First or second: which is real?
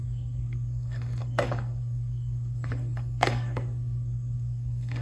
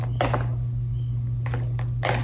second